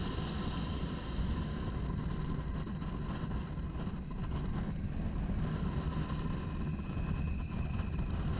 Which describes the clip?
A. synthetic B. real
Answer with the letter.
B